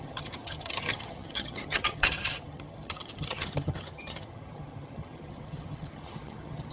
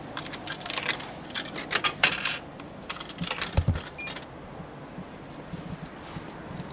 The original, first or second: second